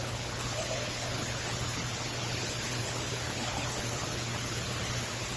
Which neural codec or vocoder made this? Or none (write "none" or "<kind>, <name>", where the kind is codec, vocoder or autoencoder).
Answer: codec, HILCodec